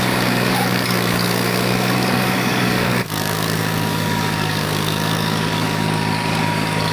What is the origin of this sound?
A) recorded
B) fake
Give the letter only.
B